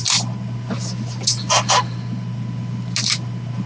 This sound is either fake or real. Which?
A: real